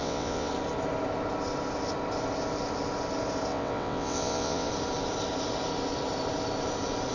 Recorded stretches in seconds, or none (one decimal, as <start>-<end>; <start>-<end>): 0.5-3.5; 4.7-7.1